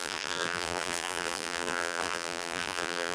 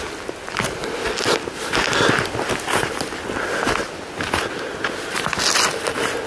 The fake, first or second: first